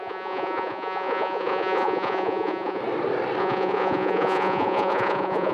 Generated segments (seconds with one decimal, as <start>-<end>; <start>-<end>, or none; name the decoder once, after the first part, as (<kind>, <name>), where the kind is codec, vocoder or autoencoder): 0.0-2.8 (vocoder, Vocos); 3.4-5.5